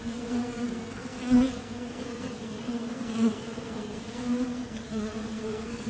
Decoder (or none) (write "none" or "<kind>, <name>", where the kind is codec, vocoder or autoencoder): codec, SNAC